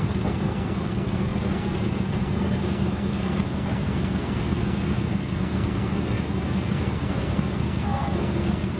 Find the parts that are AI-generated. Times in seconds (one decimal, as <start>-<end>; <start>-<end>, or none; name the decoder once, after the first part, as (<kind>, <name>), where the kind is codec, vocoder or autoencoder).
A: 0.0-8.8 (codec, SNAC)